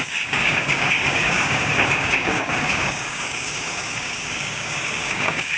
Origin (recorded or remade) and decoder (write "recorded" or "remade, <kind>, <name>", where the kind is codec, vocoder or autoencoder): remade, codec, DAC